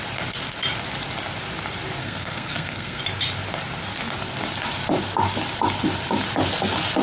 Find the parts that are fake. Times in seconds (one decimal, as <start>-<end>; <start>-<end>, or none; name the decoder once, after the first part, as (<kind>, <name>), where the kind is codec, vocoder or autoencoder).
2.0-3.0 (codec, SNAC)